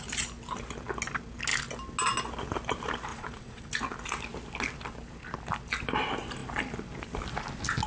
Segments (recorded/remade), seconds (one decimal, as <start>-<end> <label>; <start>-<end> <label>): 0.0-3.1 recorded; 3.1-3.7 remade; 3.7-7.9 recorded

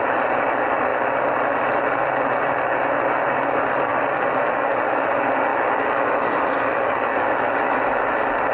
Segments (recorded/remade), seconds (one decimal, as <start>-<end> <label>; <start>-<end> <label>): 0.0-8.5 recorded

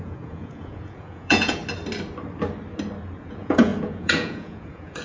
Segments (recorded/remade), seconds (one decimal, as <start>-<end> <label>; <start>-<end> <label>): 0.0-1.6 remade; 1.6-3.2 recorded; 3.2-5.0 remade